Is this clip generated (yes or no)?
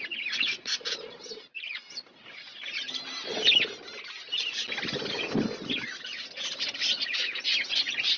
no